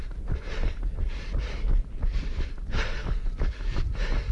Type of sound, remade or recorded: remade